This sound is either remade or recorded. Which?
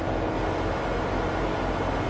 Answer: recorded